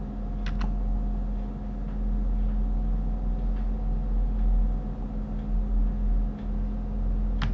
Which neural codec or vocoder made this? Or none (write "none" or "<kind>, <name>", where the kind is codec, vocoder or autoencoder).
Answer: none